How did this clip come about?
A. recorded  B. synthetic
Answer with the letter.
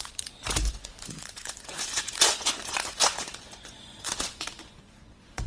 B